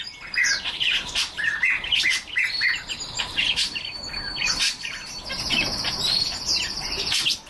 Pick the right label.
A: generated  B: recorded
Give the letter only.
A